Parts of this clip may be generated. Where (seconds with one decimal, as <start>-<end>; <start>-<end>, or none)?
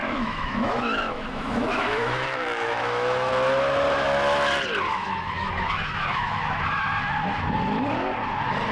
0.0-3.3; 4.9-6.6